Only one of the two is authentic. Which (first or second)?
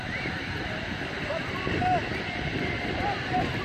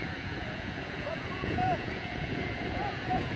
first